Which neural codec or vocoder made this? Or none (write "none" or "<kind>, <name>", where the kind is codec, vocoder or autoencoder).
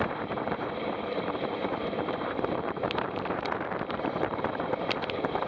vocoder, BigVGAN v2